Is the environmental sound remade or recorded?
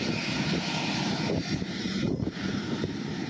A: recorded